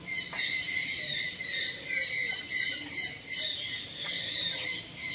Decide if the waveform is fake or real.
fake